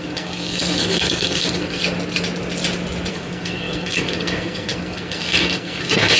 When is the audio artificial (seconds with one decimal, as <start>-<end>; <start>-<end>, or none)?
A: 0.0-1.8; 3.1-6.2